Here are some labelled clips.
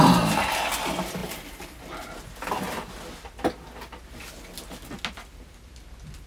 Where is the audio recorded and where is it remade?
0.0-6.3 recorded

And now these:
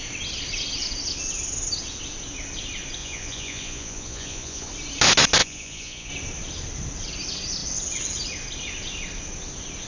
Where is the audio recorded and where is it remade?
0.0-3.0 recorded; 3.0-4.7 remade; 4.7-5.4 recorded; 5.4-6.1 remade; 6.1-9.9 recorded

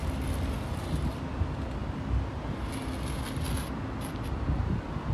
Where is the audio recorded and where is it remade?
0.0-5.1 recorded

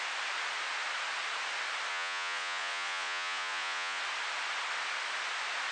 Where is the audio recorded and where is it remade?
0.0-1.9 recorded; 1.9-4.0 remade; 4.0-5.7 recorded

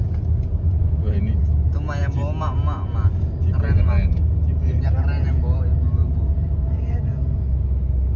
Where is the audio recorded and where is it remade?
0.0-0.8 recorded; 0.8-1.4 remade; 1.4-6.0 recorded; 6.0-6.7 remade; 6.7-8.2 recorded

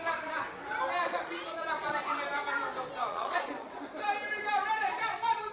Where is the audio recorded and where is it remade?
0.0-1.0 recorded; 1.0-2.0 remade; 2.0-3.1 recorded; 3.1-3.8 remade; 3.8-4.9 recorded; 4.9-5.5 remade

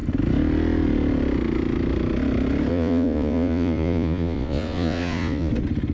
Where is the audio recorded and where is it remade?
0.0-2.7 recorded; 2.7-5.5 remade; 5.5-5.9 recorded